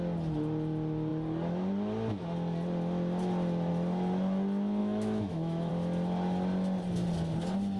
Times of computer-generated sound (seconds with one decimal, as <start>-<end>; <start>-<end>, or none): 4.8-5.7

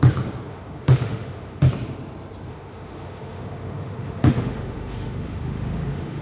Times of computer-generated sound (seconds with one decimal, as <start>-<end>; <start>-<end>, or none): 0.5-1.7; 2.5-6.2

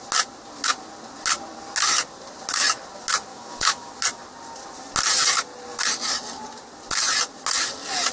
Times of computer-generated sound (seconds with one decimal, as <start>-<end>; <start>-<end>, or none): 3.3-3.9

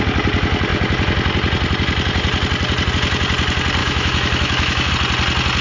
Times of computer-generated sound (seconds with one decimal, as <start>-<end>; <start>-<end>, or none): 3.8-4.9

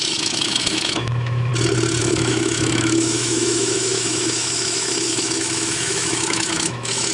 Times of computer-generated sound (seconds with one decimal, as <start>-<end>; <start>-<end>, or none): 0.0-1.5; 2.0-7.1

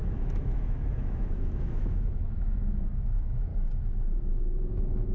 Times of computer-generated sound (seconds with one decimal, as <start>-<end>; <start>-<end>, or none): 0.0-3.5; 4.3-5.1

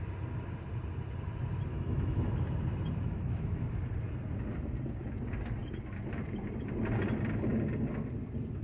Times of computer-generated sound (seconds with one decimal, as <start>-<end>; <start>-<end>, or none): 1.7-2.3; 3.0-3.8

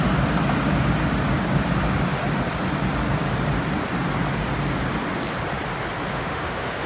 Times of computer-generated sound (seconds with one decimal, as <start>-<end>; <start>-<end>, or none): 6.1-6.9